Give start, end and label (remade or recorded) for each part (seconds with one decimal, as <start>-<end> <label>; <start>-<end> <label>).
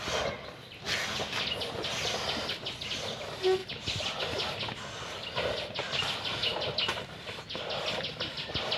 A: 0.0-8.8 recorded